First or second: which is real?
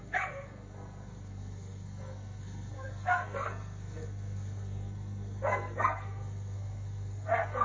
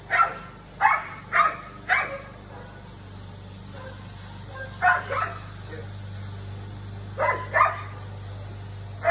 second